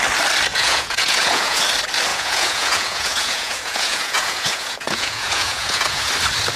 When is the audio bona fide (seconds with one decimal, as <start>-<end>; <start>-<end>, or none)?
0.0-0.5; 1.6-2.1; 6.1-6.6